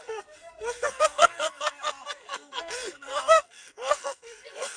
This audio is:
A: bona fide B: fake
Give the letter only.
B